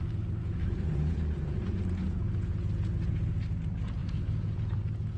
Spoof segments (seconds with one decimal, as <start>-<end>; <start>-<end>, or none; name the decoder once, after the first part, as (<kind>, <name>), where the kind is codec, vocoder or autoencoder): 0.4-3.1 (vocoder, Vocos); 4.0-4.8